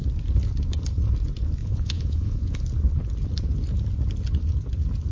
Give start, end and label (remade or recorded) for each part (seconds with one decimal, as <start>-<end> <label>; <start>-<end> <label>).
0.0-1.6 recorded; 1.6-2.6 remade; 2.6-5.1 recorded